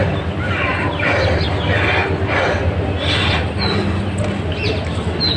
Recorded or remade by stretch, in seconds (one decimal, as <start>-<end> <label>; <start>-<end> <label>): 0.0-5.4 recorded